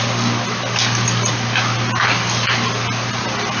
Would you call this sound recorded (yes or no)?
yes